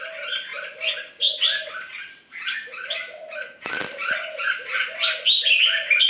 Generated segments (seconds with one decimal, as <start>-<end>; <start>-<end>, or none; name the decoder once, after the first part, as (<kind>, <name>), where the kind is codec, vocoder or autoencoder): none